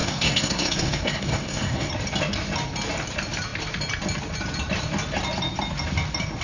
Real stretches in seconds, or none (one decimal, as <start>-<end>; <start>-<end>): 1.9-6.4